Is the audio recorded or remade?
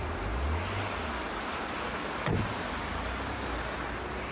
recorded